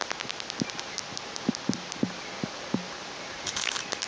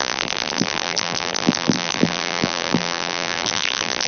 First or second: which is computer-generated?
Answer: second